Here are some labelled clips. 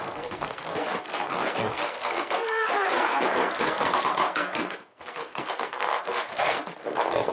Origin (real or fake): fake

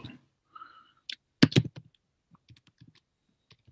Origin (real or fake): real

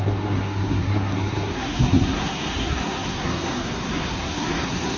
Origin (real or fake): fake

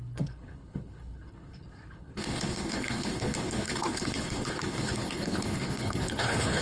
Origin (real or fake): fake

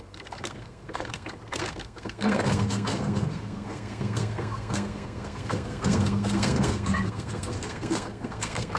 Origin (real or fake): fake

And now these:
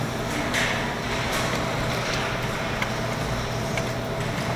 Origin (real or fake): real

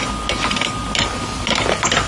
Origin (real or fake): real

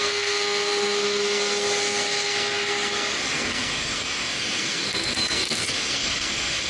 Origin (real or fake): fake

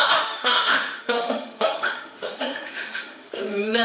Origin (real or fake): fake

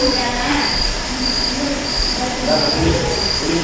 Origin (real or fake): fake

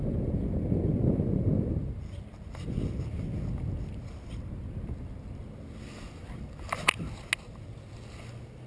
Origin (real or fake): real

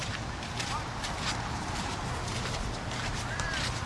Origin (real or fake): fake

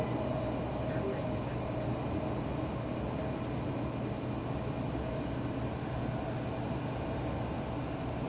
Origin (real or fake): real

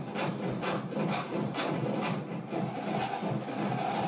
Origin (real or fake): real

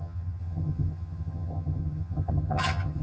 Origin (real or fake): fake